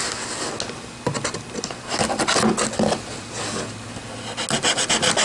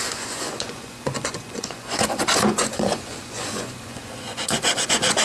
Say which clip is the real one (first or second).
first